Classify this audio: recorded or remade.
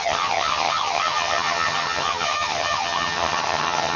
remade